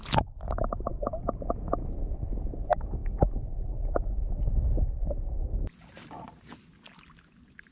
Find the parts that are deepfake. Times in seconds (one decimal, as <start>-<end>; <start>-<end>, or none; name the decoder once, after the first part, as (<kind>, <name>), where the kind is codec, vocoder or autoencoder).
none